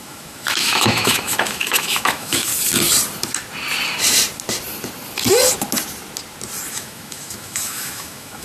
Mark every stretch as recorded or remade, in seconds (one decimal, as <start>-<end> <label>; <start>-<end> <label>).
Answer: 0.0-2.5 remade; 2.5-6.7 recorded; 6.7-8.4 remade